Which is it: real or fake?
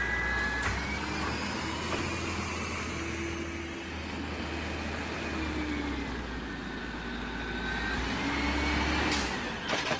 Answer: real